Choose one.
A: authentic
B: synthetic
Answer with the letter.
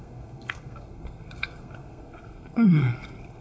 B